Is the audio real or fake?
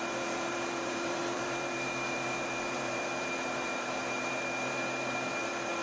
fake